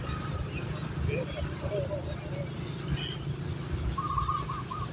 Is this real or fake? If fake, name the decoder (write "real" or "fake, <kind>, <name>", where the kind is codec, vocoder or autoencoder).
real